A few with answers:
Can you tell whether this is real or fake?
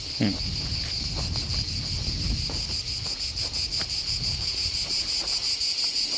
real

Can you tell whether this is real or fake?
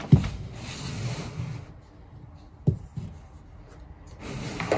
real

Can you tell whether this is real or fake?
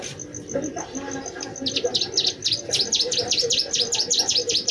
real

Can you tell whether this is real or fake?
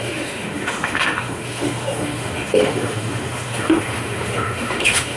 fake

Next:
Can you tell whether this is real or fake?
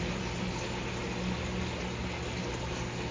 real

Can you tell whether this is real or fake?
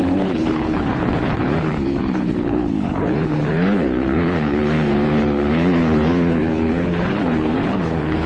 fake